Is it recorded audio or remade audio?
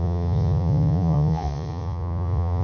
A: remade